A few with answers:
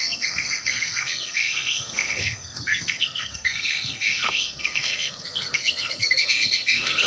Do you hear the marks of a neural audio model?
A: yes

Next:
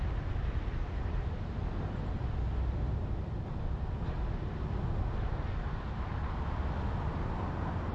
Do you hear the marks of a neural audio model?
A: no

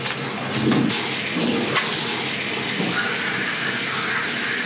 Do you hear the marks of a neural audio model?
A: no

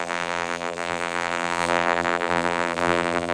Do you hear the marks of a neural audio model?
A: yes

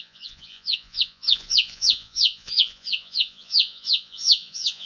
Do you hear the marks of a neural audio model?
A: yes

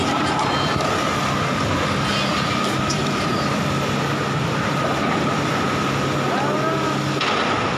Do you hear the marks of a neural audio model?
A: no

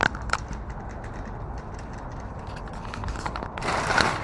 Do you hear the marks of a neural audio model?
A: yes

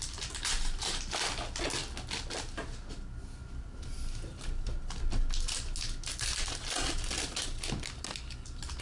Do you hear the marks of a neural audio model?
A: no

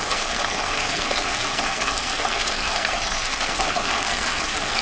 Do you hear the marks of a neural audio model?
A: yes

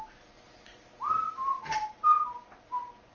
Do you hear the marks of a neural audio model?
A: no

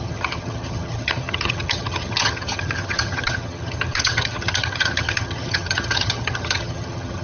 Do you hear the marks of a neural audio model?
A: yes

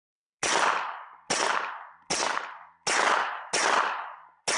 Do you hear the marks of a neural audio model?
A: no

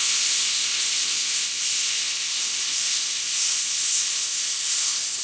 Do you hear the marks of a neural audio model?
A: yes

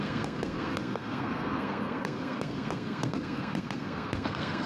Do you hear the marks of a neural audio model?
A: yes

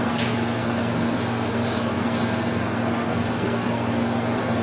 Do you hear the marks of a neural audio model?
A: yes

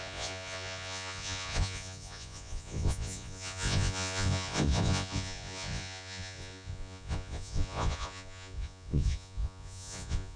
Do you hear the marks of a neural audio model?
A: yes